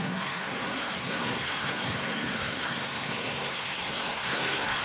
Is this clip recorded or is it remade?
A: remade